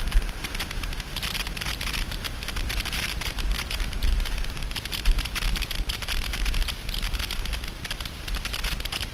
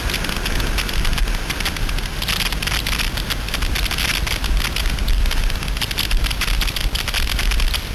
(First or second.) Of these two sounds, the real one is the second